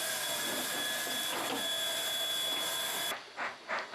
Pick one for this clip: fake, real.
real